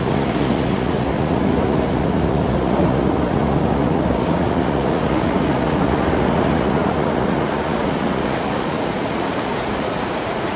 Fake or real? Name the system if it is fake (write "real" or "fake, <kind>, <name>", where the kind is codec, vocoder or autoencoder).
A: fake, vocoder, Vocos